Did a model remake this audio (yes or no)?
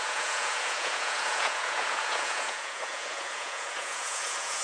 yes